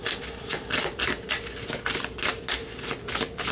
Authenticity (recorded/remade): recorded